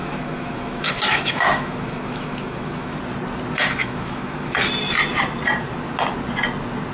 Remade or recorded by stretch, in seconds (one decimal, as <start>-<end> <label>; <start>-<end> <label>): 0.0-3.0 remade; 3.0-3.8 recorded; 3.8-4.6 remade; 4.6-6.9 recorded